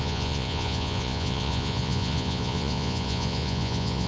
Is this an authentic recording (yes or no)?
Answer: no